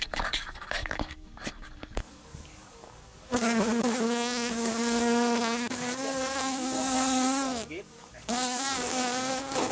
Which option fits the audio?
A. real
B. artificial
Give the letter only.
B